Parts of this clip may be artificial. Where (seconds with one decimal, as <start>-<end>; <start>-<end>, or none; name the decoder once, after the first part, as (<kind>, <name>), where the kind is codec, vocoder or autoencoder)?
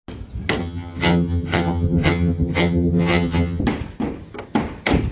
0.6-3.6 (vocoder, HiFi-GAN)